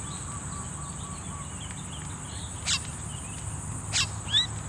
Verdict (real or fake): real